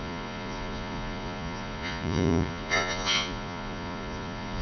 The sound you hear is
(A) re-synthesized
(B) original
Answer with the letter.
A